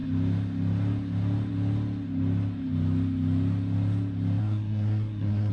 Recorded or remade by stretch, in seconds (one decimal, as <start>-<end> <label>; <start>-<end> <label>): 0.0-4.4 recorded; 4.4-5.5 remade